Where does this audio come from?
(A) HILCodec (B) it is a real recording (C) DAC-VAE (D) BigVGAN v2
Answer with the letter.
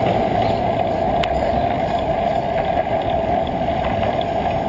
B